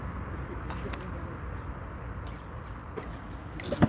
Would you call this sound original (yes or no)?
yes